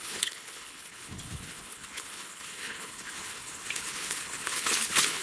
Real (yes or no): no